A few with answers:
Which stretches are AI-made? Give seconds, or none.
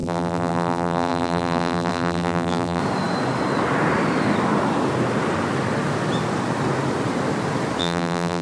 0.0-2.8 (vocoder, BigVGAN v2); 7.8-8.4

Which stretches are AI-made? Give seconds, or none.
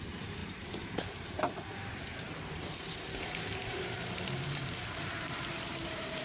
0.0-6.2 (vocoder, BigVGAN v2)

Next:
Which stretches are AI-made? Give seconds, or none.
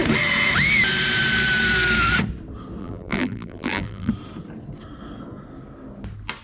2.8-4.1 (vocoder, BigVGAN v2)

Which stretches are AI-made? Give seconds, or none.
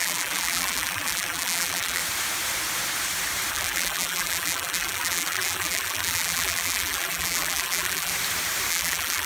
0.0-2.0 (vocoder, BigVGAN v2); 3.5-8.1; 8.7-9.3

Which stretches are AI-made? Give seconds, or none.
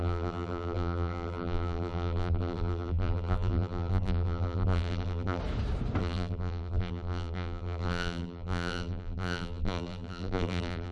0.0-5.4 (vocoder, BigVGAN v2); 6.0-10.9